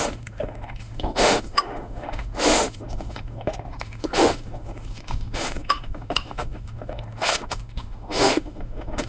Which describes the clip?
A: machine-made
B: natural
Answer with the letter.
A